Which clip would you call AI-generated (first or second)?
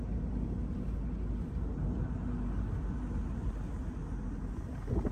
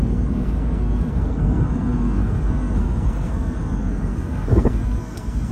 second